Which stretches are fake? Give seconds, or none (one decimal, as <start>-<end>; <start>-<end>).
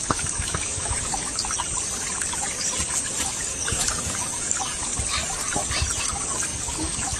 0.0-1.4; 3.2-4.9; 6.0-7.2